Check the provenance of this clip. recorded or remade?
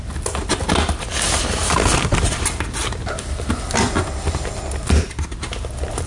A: recorded